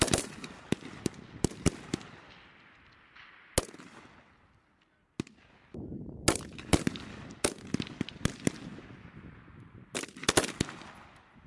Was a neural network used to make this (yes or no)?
no